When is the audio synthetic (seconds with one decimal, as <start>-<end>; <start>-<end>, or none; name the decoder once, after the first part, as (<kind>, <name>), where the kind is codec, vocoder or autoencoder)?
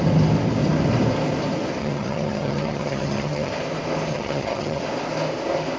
1.8-3.5 (vocoder, HiFi-GAN); 4.1-4.8